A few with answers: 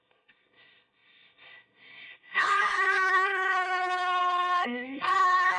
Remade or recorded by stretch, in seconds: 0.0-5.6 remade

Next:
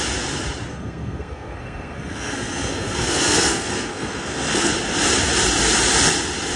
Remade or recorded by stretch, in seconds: 0.0-0.7 recorded; 0.7-4.7 remade; 4.7-6.6 recorded

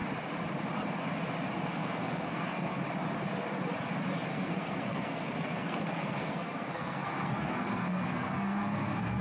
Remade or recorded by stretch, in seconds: 0.0-1.7 recorded; 1.7-2.8 remade; 2.8-4.3 recorded; 4.3-9.2 remade

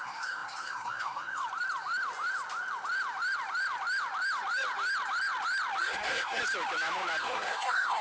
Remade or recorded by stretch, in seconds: 0.0-1.4 remade; 1.4-5.8 recorded; 5.8-6.4 remade; 6.4-7.2 recorded; 7.2-8.0 remade

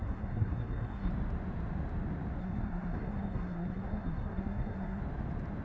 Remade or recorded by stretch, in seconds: 0.0-1.1 remade; 1.1-2.4 recorded; 2.4-5.0 remade; 5.0-5.6 recorded

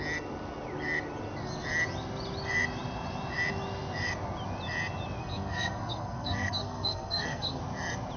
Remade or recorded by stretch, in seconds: 0.0-5.2 recorded; 5.2-7.6 remade; 7.6-8.2 recorded

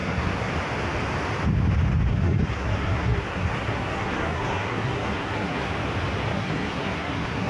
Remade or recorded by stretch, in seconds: 0.0-0.5 remade; 0.5-2.1 recorded; 2.1-5.7 remade; 5.7-6.3 recorded; 6.3-7.5 remade